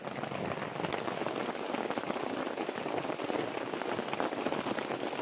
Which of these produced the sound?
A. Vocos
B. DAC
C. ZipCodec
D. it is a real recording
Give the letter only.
D